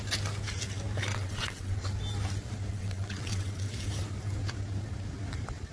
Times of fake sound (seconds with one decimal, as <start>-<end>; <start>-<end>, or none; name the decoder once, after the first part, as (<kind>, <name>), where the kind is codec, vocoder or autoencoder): 1.1-1.9 (vocoder, WaveNeXt); 2.7-3.7